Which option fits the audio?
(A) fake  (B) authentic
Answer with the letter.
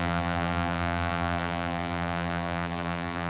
A